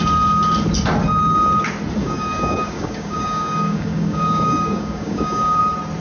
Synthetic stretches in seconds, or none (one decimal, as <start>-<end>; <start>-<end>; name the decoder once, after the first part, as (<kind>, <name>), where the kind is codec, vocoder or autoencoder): 2.0-5.6 (codec, DAC)